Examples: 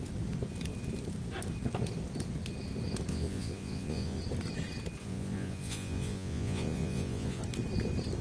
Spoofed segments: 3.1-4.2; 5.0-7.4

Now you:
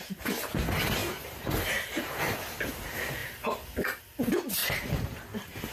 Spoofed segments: 1.0-2.2; 3.2-4.0; 4.6-5.7